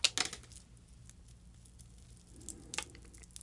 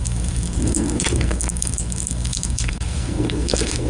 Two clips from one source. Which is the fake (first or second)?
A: second